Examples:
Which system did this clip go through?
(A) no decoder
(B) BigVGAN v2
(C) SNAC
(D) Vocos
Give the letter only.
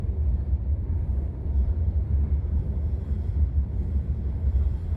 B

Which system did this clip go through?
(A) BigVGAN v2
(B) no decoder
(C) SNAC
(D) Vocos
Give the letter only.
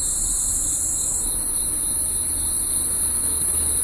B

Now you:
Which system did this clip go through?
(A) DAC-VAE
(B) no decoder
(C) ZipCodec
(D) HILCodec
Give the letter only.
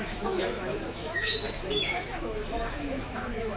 A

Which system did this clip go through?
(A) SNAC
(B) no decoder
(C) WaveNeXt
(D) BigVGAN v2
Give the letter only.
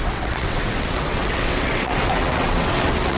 C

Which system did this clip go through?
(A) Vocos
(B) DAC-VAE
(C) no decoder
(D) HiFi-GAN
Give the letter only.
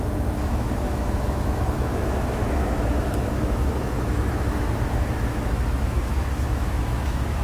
B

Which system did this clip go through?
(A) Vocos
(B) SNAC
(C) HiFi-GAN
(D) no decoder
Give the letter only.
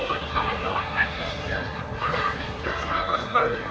B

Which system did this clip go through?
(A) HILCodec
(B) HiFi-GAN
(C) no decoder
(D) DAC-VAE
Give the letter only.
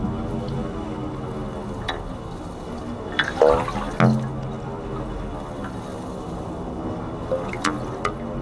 C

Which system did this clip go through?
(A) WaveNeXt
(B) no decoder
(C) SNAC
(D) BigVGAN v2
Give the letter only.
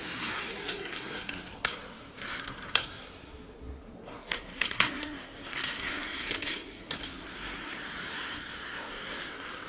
C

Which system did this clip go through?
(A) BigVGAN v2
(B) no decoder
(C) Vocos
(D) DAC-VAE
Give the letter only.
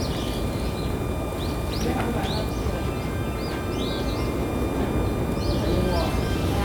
B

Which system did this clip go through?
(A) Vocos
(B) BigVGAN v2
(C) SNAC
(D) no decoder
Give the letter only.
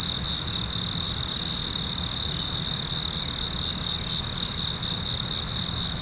D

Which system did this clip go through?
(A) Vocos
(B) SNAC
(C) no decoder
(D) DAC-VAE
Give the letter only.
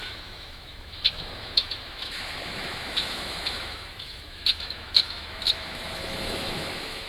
D